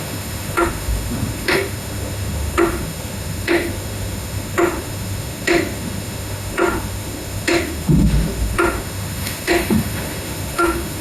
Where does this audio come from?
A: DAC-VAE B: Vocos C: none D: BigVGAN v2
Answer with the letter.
A